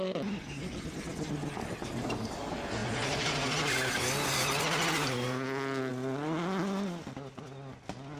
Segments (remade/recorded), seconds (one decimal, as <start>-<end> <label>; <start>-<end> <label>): 0.0-8.2 recorded